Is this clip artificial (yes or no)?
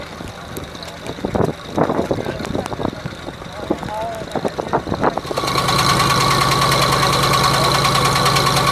no